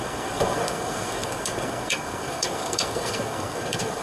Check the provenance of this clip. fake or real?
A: fake